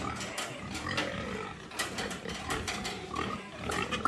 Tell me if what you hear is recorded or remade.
remade